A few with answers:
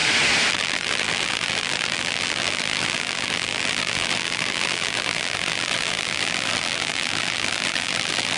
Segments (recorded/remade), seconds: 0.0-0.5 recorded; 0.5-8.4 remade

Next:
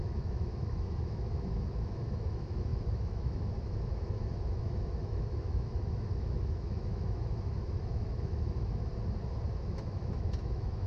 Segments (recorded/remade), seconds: 0.0-8.9 remade; 8.9-9.6 recorded; 9.6-10.9 remade

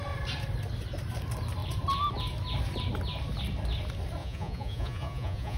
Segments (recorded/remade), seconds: 0.0-4.2 recorded; 4.2-5.6 remade